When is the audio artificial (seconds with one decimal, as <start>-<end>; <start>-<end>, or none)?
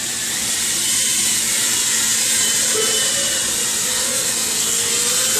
3.9-4.9